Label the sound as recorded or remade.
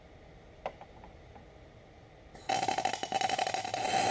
recorded